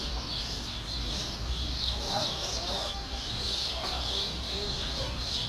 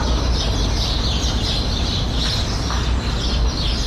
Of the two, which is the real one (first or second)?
second